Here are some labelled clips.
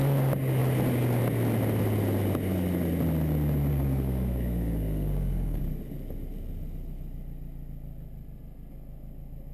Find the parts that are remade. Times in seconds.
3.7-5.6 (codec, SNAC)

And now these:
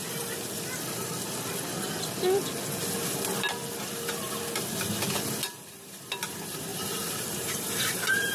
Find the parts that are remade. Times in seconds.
6.7-8.3 (vocoder, BigVGAN v2)

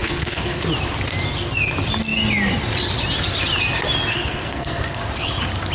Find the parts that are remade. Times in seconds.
0.0-0.6 (codec, SNAC); 4.1-5.0

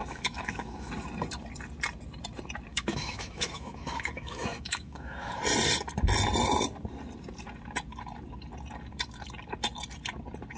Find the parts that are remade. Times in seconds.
0.0-0.9 (autoencoder, DAC-VAE); 2.7-5.4

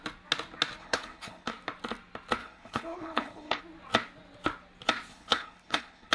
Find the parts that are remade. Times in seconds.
0.8-1.5 (codec, HILCodec); 2.4-3.6; 5.1-6.1